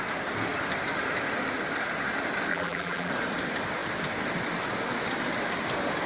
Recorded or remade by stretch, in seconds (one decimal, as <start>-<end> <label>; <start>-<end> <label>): 0.0-2.5 recorded; 2.5-3.1 remade; 3.1-6.1 recorded